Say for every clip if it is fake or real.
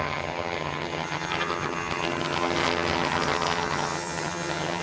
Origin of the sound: fake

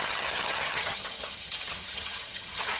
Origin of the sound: fake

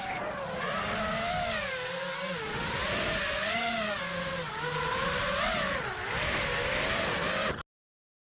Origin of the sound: real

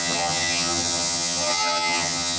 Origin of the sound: fake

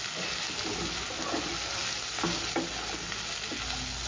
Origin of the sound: real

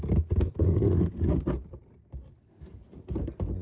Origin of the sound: real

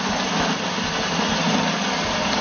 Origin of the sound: real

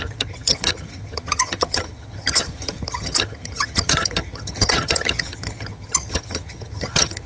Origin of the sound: fake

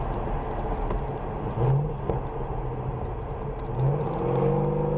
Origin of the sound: real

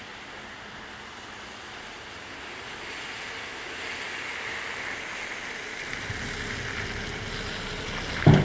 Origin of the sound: real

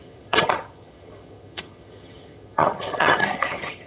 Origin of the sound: fake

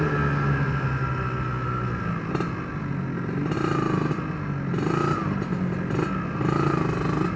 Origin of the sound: real